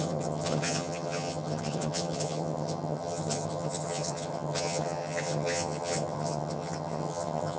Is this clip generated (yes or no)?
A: yes